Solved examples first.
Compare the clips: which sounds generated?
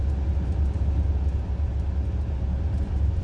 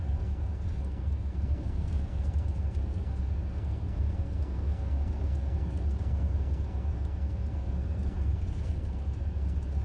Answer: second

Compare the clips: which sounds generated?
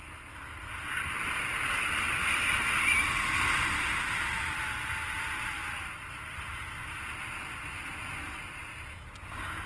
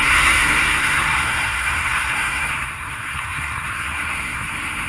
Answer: second